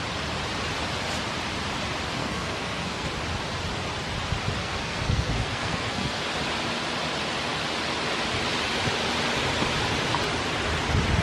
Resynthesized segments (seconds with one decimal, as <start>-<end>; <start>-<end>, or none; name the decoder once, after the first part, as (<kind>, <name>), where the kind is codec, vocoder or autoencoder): 2.2-3.1 (codec, SNAC); 4.6-6.2